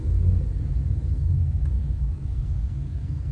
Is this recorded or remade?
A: remade